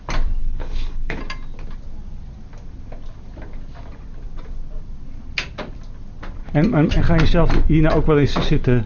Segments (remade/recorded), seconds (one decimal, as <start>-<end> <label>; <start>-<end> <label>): 0.0-0.4 recorded; 0.4-1.2 remade; 1.2-8.9 recorded